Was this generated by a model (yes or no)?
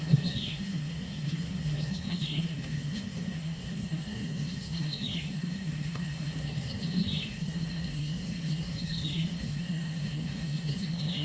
yes